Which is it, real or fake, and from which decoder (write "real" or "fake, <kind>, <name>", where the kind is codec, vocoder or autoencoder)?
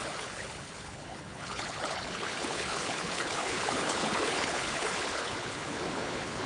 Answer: fake, codec, HILCodec